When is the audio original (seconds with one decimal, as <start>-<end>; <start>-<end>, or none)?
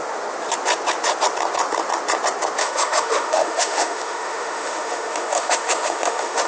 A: 0.0-2.6